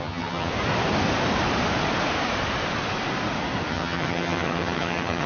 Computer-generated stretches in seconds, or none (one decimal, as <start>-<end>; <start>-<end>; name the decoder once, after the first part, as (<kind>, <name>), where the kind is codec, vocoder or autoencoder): 0.0-0.5 (vocoder, HiFi-GAN); 3.7-5.3